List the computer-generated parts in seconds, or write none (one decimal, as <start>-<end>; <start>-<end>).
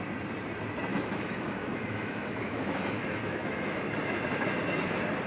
0.9-3.8